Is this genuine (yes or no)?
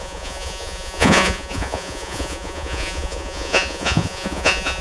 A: no